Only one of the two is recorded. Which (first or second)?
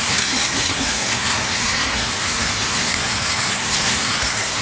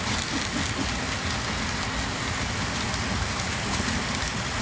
second